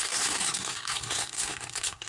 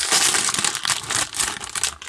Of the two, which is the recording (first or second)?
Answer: second